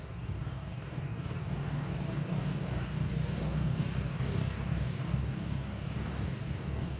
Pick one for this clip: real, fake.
fake